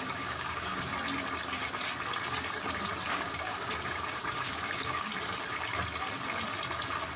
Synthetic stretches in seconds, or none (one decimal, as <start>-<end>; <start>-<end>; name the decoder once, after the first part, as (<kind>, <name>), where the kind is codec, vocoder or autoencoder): 0.0-0.9 (codec, DAC); 3.1-5.1